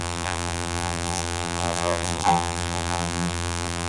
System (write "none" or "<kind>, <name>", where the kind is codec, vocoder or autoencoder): vocoder, BigVGAN v2